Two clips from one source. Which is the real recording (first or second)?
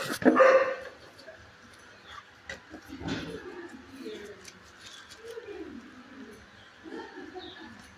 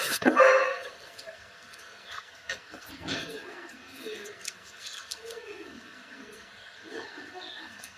first